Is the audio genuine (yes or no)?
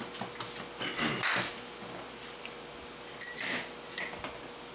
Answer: yes